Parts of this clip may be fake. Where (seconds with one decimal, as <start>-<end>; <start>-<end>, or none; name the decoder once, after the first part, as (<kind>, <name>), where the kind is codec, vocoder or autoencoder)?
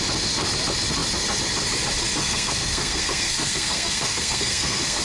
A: 2.2-5.0 (codec, SNAC)